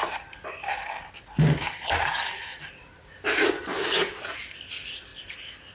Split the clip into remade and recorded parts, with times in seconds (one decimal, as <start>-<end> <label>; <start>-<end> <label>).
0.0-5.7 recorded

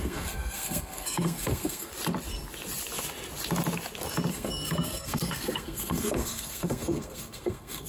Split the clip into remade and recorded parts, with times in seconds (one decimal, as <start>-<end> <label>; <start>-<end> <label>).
0.0-1.9 remade; 1.9-4.3 recorded; 4.3-7.9 remade

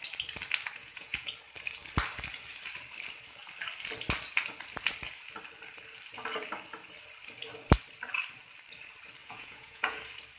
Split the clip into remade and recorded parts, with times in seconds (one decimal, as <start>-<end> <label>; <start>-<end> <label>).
0.0-0.8 recorded; 0.8-1.3 remade; 1.3-9.2 recorded; 9.2-10.0 remade; 10.0-10.4 recorded

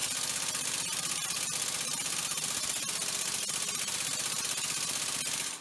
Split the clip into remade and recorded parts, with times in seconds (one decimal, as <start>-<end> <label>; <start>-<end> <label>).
0.0-5.6 recorded